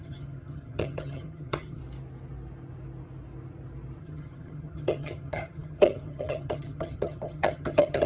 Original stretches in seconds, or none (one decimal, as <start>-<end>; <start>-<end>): 1.8-4.0